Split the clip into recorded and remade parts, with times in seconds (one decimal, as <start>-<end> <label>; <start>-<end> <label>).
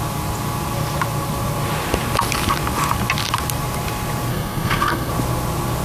0.0-4.3 recorded; 4.3-5.1 remade; 5.1-5.8 recorded